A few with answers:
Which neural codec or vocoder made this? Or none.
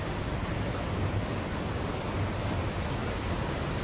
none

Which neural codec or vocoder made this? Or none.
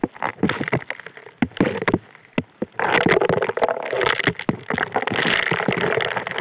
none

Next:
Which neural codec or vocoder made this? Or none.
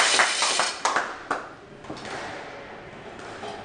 none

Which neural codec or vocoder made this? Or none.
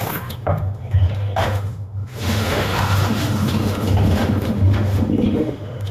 autoencoder, DAC-VAE